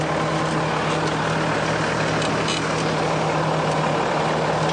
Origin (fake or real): real